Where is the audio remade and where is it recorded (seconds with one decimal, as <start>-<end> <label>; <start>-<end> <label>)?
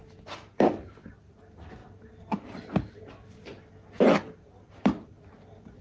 0.0-5.8 recorded